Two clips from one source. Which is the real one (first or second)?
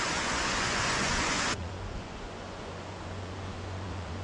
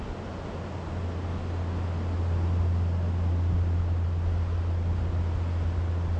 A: second